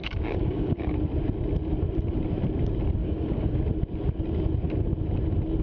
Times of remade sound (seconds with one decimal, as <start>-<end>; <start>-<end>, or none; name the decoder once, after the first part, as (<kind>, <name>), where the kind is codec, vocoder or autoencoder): 0.0-0.9 (codec, DAC); 3.0-3.6